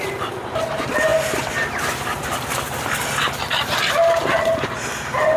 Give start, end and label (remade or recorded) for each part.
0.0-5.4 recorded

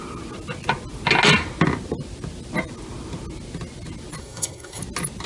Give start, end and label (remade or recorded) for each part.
0.0-4.2 recorded; 4.2-4.8 remade; 4.8-5.3 recorded

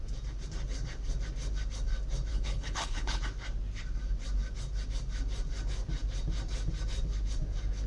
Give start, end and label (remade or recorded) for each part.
0.0-2.3 recorded; 2.3-3.2 remade; 3.2-7.9 recorded